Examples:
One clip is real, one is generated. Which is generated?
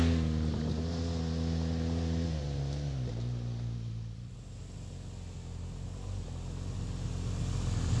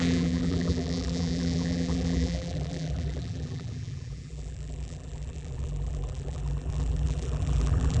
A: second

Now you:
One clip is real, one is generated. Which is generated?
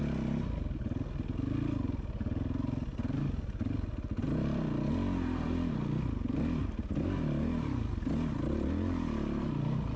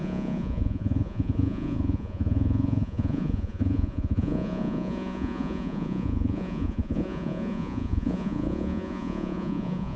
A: second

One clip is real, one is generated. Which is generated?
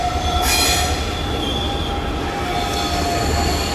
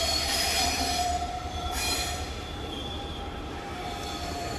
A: second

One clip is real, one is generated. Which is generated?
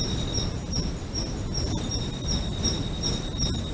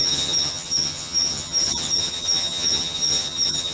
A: second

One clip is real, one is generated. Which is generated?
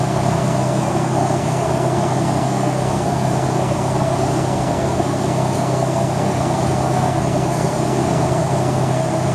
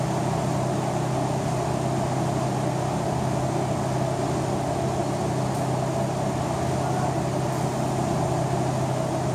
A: first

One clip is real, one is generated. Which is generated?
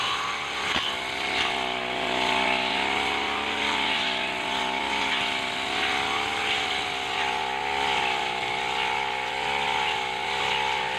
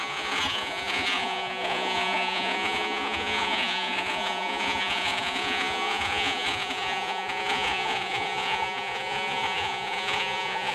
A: second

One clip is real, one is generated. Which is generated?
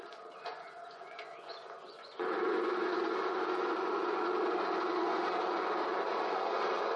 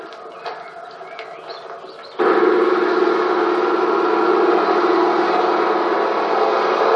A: first